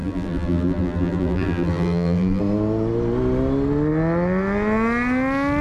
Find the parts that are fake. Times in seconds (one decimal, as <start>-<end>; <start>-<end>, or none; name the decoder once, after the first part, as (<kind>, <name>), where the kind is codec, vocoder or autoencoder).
0.0-2.4 (vocoder, BigVGAN v2)